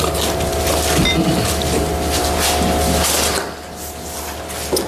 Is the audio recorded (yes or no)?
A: yes